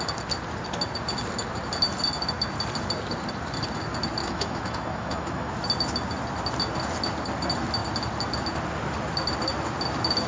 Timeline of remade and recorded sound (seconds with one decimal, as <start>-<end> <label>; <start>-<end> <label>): 0.0-4.2 recorded; 4.2-5.5 remade; 5.5-10.3 recorded